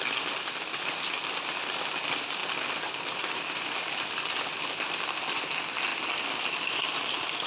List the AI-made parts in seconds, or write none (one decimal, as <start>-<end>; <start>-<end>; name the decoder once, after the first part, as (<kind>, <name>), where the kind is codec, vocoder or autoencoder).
5.9-6.8 (vocoder, BigVGAN v2)

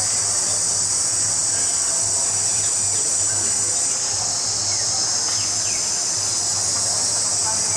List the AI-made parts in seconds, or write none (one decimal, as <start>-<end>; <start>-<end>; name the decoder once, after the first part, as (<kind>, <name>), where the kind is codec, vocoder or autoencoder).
none

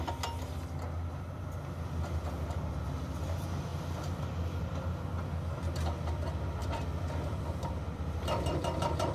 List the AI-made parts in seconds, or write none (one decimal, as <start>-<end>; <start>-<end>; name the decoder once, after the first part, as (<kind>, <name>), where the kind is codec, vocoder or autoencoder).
6.6-9.1 (vocoder, BigVGAN v2)